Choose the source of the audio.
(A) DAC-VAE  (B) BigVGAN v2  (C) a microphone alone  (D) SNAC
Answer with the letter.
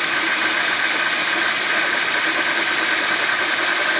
C